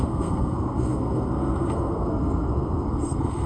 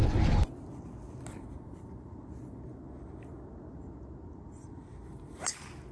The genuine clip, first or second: second